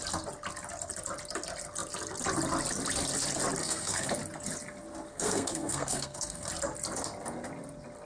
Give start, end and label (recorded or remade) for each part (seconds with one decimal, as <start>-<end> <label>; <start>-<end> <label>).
0.0-3.6 recorded; 3.6-4.1 remade; 4.1-5.1 recorded; 5.1-6.5 remade; 6.5-8.1 recorded